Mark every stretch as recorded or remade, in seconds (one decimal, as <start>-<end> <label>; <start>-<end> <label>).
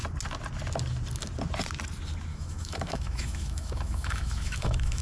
0.0-2.3 recorded; 2.3-5.0 remade